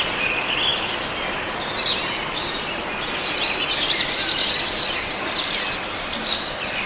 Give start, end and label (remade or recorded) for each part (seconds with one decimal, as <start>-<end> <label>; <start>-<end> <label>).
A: 0.0-6.9 recorded

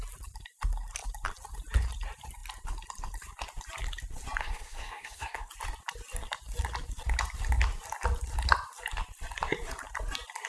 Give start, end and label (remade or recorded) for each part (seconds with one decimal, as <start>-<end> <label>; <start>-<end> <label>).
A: 0.0-4.4 recorded; 4.4-5.5 remade; 5.5-10.5 recorded

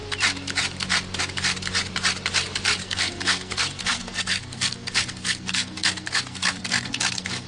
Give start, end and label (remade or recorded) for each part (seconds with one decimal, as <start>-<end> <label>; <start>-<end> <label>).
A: 0.0-2.8 recorded; 2.8-7.5 remade

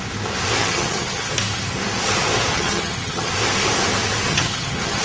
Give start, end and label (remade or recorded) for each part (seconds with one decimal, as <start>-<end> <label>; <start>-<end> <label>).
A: 0.0-0.6 recorded; 0.6-1.3 remade; 1.3-2.5 recorded; 2.5-3.3 remade; 3.3-4.3 recorded; 4.3-5.0 remade

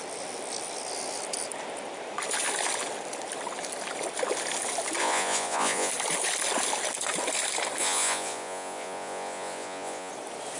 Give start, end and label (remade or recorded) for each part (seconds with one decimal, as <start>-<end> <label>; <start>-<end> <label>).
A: 0.0-5.0 recorded; 5.0-5.9 remade; 5.9-7.8 recorded; 7.8-10.1 remade; 10.1-10.6 recorded

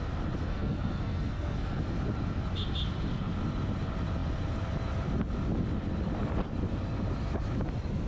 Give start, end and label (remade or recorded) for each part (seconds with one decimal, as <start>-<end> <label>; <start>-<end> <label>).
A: 0.0-0.5 recorded; 0.5-1.8 remade; 1.8-8.1 recorded